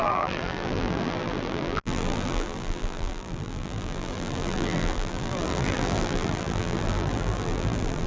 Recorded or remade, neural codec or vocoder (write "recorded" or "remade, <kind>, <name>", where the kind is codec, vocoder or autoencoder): remade, vocoder, BigVGAN v2